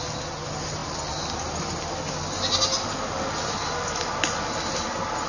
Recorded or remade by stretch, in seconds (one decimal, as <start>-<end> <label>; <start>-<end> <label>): 0.0-5.3 recorded